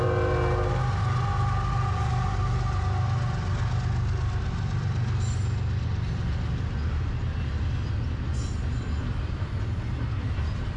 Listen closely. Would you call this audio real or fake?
real